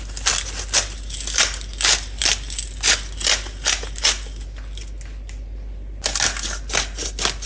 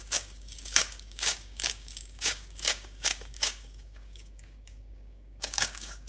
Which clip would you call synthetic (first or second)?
second